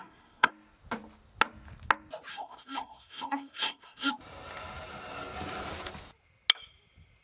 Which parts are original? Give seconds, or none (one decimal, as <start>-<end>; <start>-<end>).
0.5-2.3; 4.1-7.2